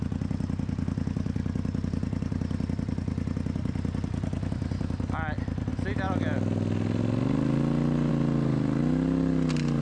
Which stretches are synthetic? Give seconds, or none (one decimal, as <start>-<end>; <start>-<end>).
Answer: none